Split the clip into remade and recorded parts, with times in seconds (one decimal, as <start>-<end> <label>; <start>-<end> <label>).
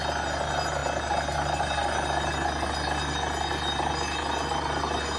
0.0-5.2 recorded